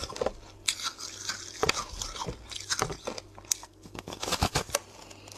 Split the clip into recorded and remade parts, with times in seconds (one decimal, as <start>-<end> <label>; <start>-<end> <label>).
0.0-3.6 recorded; 3.6-4.7 remade; 4.7-5.4 recorded